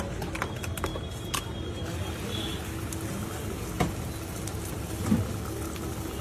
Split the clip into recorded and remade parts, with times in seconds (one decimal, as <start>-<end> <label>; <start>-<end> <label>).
0.0-6.2 recorded